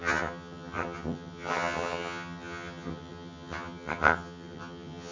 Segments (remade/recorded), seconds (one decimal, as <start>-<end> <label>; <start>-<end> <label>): 0.0-5.1 remade